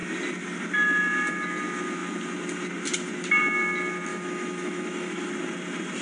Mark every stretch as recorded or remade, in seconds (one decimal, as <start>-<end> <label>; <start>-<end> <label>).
0.0-4.1 recorded; 4.1-5.3 remade; 5.3-6.0 recorded